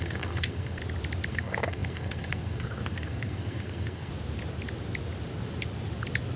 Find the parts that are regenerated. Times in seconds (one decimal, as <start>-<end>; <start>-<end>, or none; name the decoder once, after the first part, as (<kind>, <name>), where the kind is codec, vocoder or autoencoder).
0.0-0.8 (codec, SNAC); 1.3-4.1